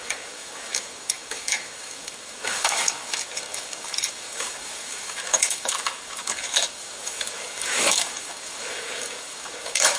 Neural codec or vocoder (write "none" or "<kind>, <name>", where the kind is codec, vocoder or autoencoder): codec, DAC